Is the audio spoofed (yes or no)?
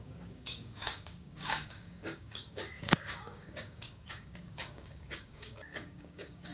yes